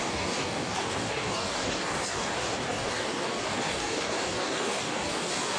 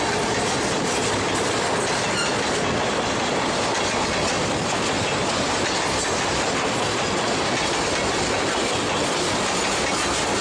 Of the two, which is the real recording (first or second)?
second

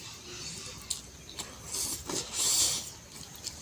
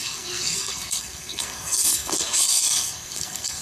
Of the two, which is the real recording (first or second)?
first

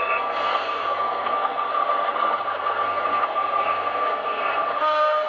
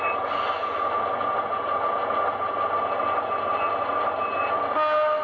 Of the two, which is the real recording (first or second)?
second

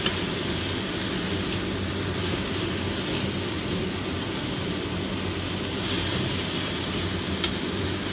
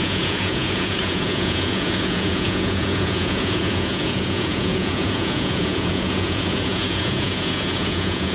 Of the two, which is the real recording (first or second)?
first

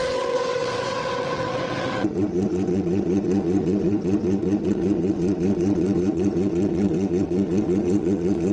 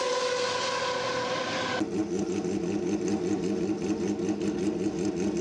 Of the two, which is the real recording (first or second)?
second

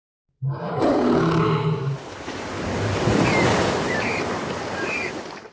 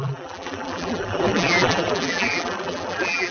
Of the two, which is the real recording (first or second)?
first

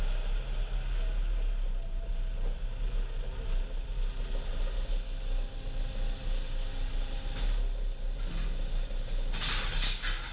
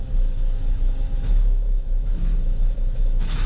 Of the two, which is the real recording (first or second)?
first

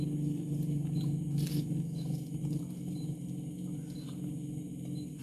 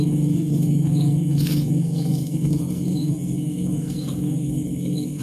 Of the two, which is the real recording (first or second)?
first